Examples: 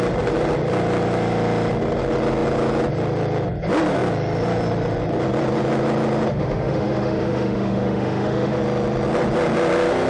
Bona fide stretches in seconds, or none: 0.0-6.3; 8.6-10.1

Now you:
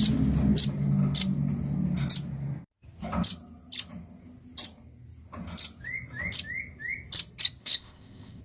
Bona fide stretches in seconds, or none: 0.0-7.6

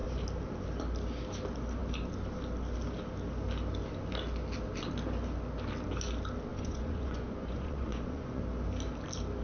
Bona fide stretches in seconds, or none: 0.0-6.5; 8.4-9.4